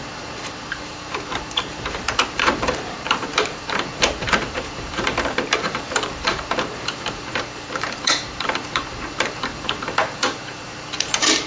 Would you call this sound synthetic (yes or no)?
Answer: yes